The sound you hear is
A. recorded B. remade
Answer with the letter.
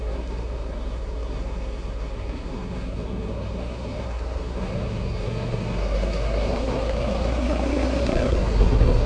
B